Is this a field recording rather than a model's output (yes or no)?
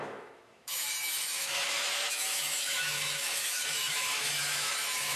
no